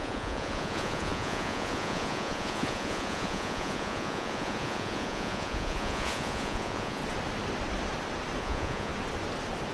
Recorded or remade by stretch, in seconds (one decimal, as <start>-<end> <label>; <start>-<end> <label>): 0.0-7.0 remade; 7.0-8.4 recorded; 8.4-8.9 remade; 8.9-9.7 recorded